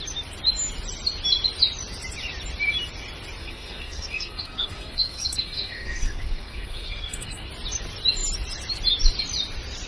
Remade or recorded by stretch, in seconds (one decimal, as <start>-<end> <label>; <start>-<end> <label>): 0.0-3.4 recorded; 3.4-7.5 remade; 7.5-9.9 recorded